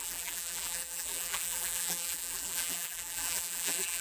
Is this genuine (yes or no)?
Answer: no